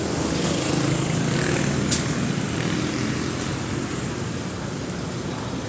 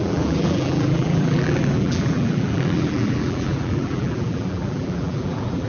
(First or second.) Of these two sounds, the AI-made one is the second